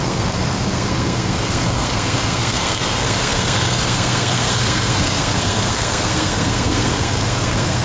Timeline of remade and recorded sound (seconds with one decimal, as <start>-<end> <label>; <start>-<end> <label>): 0.0-7.8 remade